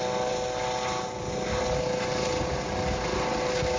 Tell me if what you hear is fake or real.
real